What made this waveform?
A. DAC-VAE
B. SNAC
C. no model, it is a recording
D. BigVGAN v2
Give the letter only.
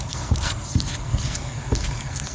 B